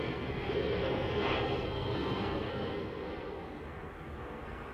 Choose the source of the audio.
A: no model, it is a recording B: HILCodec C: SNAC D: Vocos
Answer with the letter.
C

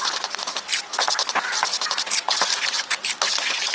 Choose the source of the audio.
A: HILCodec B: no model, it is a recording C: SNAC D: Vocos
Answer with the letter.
B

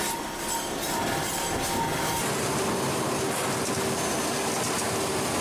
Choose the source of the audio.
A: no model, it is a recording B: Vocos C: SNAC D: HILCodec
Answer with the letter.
A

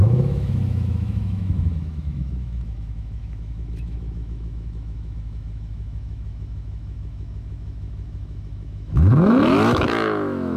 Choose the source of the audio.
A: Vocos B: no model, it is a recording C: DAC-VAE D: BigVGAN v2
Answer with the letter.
C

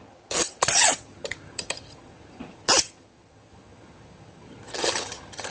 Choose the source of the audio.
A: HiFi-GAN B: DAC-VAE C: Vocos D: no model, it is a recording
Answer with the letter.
A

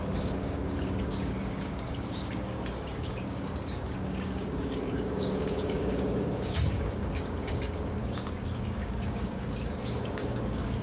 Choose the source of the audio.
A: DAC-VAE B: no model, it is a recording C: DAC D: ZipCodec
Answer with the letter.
C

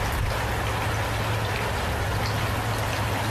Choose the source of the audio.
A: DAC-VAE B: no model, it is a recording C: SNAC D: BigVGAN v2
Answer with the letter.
B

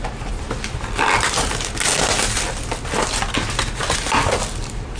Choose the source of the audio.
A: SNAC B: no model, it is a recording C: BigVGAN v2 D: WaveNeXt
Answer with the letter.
B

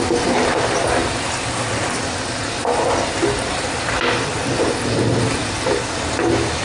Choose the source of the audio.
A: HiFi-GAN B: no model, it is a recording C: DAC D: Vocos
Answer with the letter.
B